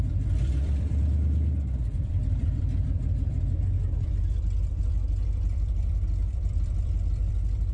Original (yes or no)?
no